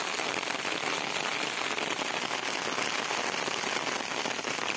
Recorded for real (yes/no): yes